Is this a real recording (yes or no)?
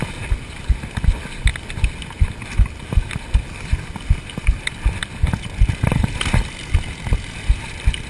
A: yes